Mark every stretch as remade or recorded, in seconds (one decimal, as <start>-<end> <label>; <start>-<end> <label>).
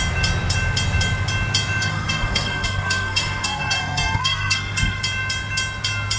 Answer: 0.0-1.8 recorded; 1.8-5.0 remade; 5.0-6.2 recorded